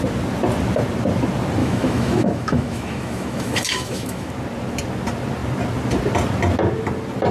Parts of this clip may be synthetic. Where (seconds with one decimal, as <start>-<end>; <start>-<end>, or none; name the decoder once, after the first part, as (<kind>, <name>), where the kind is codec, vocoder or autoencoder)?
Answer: 1.6-4.3 (autoencoder, DAC-VAE)